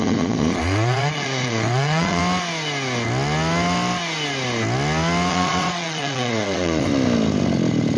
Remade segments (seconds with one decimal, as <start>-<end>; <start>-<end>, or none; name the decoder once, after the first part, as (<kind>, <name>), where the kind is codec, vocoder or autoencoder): 0.0-2.2 (vocoder, Vocos); 5.3-6.9